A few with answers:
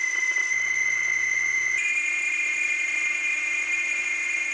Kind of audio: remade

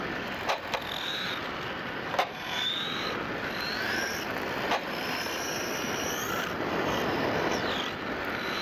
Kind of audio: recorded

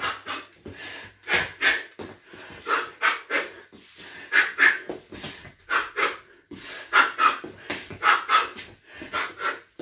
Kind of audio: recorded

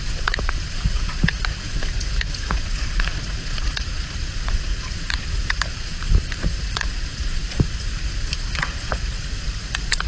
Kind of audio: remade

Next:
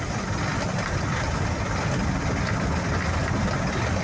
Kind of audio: recorded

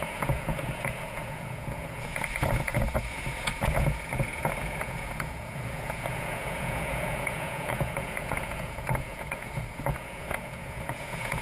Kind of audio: remade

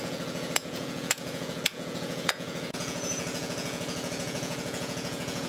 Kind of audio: remade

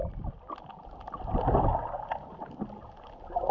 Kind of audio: recorded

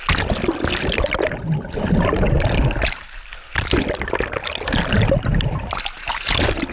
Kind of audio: recorded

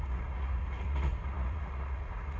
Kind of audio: remade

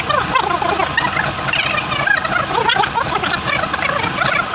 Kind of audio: recorded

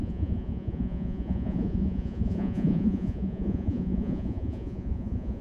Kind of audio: remade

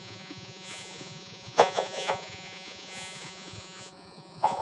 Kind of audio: remade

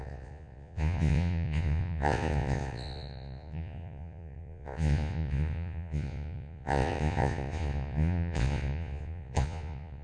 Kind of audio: remade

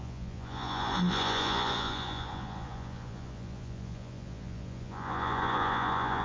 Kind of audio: remade